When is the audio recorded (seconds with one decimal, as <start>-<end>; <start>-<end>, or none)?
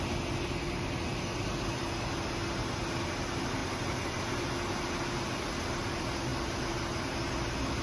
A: 0.0-3.6; 4.2-7.8